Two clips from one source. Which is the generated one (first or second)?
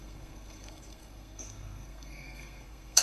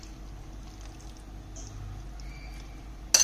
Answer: first